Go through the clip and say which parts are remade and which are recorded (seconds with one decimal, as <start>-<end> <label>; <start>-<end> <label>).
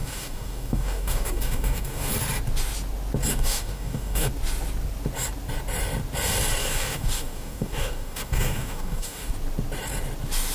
0.0-2.1 remade; 2.1-3.3 recorded; 3.3-4.3 remade; 4.3-6.6 recorded; 6.6-9.3 remade; 9.3-10.5 recorded